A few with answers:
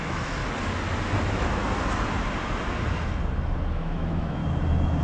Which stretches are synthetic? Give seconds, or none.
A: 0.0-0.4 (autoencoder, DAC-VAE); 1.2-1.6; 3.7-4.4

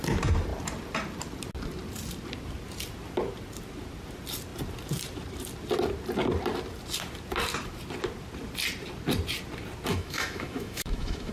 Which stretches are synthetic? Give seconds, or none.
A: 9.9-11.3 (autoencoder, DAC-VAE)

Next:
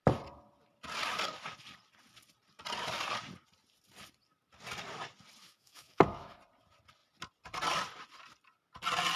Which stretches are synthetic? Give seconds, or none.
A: 5.4-6.4 (autoencoder, DAC-VAE)